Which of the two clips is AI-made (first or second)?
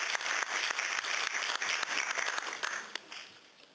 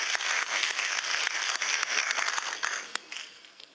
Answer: second